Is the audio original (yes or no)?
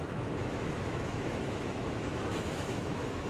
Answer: no